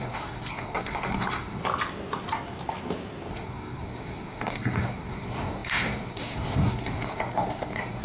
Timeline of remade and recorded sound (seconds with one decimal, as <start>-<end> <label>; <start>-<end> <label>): 0.0-1.6 remade; 1.6-3.3 recorded; 3.3-8.0 remade